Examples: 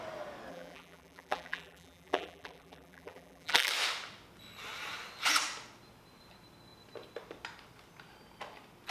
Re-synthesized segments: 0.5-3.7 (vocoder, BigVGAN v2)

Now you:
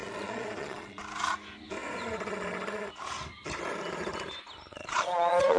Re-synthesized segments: 0.0-1.0 (vocoder, Vocos); 4.7-5.6